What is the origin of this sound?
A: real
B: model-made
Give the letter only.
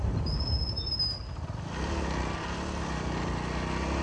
A